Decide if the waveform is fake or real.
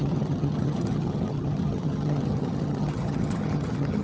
fake